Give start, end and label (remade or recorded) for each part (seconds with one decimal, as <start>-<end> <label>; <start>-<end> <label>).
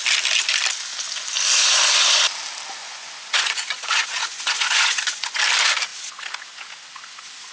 0.0-2.8 recorded; 2.8-5.4 remade; 5.4-7.5 recorded